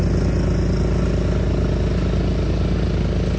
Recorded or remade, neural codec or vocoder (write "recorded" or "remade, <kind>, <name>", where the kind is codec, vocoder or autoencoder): recorded